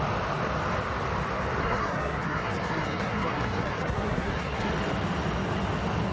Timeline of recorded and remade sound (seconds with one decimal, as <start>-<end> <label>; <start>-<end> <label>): 0.0-1.6 recorded; 1.6-4.7 remade; 4.7-6.1 recorded